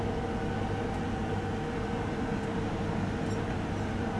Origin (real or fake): real